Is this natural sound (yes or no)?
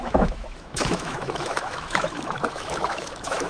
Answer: no